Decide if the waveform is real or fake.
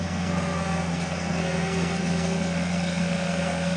fake